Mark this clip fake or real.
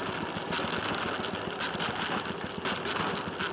real